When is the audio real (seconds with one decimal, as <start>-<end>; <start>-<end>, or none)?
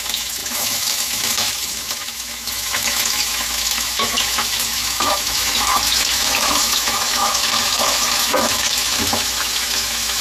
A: none